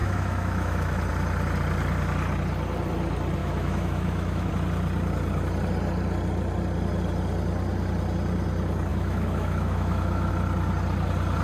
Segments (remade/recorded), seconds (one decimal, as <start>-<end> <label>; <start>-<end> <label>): 0.0-1.1 remade; 1.1-3.4 recorded; 3.4-4.5 remade; 4.5-8.9 recorded; 8.9-10.3 remade; 10.3-11.4 recorded